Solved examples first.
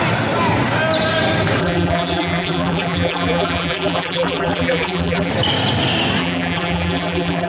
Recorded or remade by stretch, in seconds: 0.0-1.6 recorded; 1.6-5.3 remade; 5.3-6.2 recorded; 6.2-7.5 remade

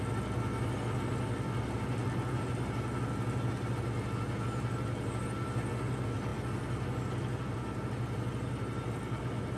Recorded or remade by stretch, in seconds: 0.0-9.6 recorded

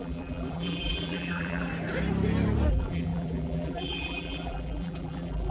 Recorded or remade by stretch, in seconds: 0.0-1.7 remade; 1.7-2.7 recorded; 2.7-5.5 remade

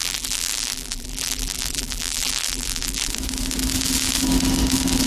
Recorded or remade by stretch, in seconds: 0.0-3.1 remade; 3.1-5.1 recorded

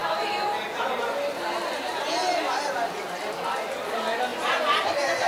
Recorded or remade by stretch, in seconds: 0.0-4.3 recorded; 4.3-5.3 remade

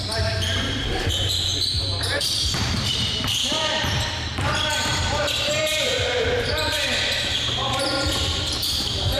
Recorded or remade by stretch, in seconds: 0.0-1.5 remade; 1.5-2.0 recorded; 2.0-7.6 remade; 7.6-8.5 recorded; 8.5-9.2 remade

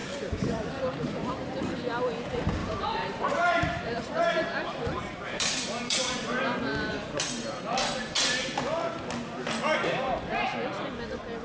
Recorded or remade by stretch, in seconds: 0.0-1.3 remade; 1.3-2.6 recorded; 2.6-6.4 remade; 6.4-11.4 recorded

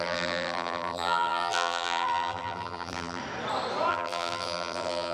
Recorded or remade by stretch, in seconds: 0.0-3.2 remade; 3.2-3.9 recorded; 3.9-5.1 remade